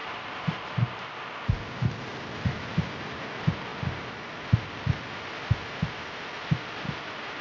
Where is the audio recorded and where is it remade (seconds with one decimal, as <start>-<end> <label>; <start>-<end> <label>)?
0.0-0.7 remade; 0.7-7.4 recorded